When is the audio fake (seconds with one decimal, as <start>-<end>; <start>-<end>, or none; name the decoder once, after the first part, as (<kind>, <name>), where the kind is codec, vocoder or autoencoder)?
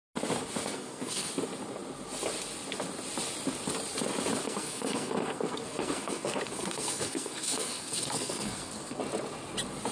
0.6-1.3 (codec, SNAC); 4.4-9.0